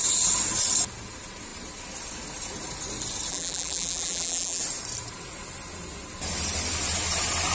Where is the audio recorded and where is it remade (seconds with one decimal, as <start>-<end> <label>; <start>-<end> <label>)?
0.0-3.3 recorded; 3.3-4.6 remade; 4.6-7.5 recorded